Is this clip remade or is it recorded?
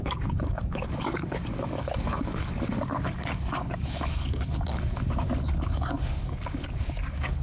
remade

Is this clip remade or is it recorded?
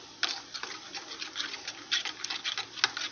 recorded